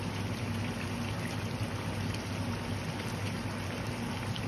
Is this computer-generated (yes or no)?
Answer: no